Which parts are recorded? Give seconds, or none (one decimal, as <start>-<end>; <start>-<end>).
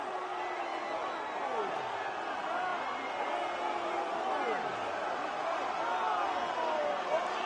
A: 0.0-7.5